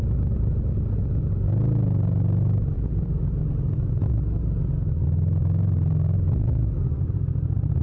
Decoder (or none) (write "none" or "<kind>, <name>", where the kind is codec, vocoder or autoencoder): none